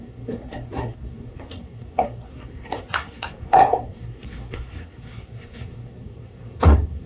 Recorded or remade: remade